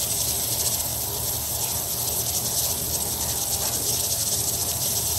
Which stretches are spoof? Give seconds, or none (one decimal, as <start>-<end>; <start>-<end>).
0.0-0.9; 4.0-5.2